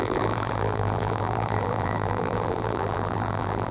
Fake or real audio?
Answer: fake